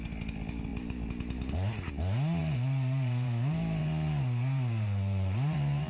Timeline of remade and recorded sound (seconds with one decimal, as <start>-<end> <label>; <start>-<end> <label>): 0.0-2.4 recorded; 2.4-5.9 remade